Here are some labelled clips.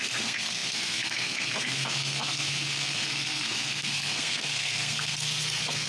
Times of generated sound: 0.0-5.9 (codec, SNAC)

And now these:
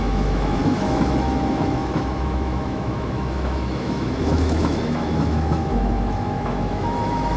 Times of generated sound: 0.0-7.4 (autoencoder, DAC-VAE)